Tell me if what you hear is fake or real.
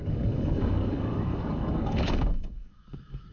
fake